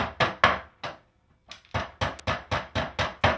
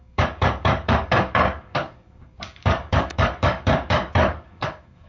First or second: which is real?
first